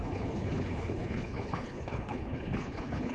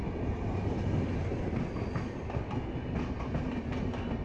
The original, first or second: second